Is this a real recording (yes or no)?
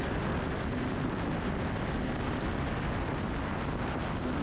yes